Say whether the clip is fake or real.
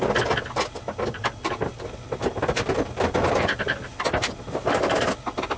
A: real